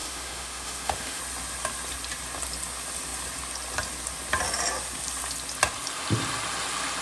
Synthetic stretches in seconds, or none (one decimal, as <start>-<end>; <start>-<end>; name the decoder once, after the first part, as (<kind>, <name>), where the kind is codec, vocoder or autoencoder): 0.0-1.2 (autoencoder, DAC-VAE)